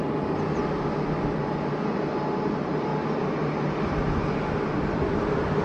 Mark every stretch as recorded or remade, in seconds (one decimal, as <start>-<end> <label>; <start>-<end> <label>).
0.0-5.6 recorded